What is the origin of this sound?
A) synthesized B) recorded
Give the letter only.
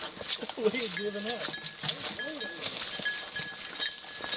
B